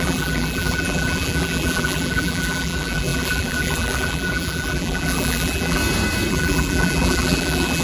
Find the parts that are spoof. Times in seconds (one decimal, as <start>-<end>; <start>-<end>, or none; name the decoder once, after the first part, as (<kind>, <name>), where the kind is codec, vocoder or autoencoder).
0.0-5.8 (vocoder, BigVGAN v2); 6.3-7.8